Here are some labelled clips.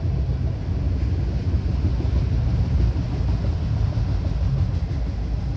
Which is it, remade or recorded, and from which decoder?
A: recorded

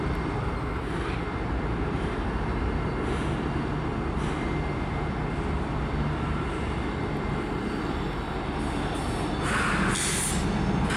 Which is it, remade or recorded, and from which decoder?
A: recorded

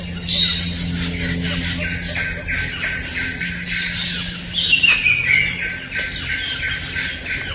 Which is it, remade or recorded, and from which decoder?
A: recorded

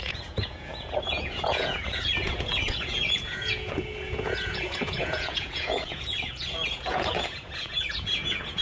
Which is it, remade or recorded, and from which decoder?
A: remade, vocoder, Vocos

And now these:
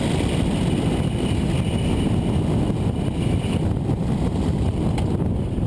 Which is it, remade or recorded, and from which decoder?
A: recorded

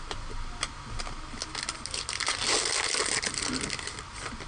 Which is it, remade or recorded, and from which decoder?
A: recorded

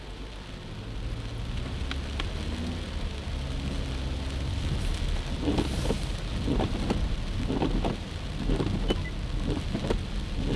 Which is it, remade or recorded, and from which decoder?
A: recorded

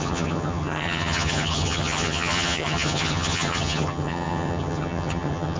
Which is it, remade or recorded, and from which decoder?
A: remade, vocoder, HiFi-GAN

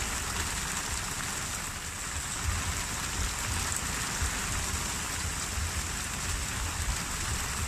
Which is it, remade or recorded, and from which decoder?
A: recorded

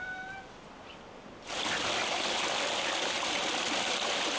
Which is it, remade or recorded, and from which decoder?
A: recorded